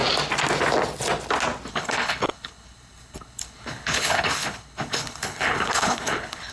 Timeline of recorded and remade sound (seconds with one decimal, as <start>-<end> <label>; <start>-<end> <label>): 0.0-1.7 recorded; 1.7-6.5 remade